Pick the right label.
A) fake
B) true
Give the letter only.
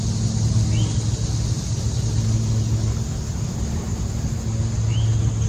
B